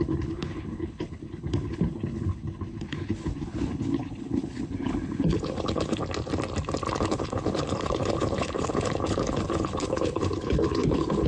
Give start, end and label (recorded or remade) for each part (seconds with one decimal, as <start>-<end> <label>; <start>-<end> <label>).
0.0-6.0 remade; 6.0-7.0 recorded; 7.0-11.3 remade